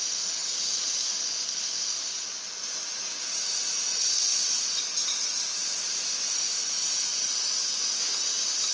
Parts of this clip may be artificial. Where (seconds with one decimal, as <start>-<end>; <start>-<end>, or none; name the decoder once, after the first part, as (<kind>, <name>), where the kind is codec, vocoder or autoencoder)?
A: none